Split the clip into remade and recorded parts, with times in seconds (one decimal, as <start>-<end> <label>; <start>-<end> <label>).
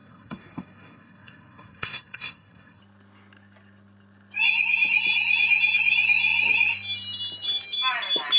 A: 0.0-2.8 remade; 2.8-8.4 recorded